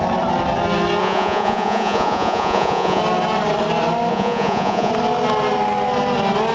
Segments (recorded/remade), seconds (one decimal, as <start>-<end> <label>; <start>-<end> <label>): 0.0-1.0 recorded; 1.0-3.0 remade; 3.0-4.1 recorded; 4.1-4.9 remade; 4.9-6.5 recorded